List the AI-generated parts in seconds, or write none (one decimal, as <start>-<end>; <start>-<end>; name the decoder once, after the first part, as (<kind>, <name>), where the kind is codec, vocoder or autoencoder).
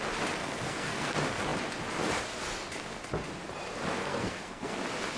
0.4-1.1 (codec, SNAC); 4.0-4.8